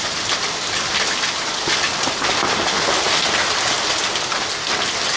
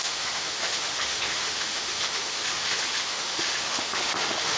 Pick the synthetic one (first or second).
second